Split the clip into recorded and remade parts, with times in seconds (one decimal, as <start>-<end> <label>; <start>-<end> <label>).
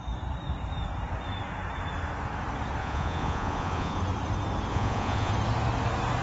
0.0-2.8 recorded; 2.8-4.0 remade; 4.0-4.7 recorded; 4.7-5.3 remade; 5.3-6.2 recorded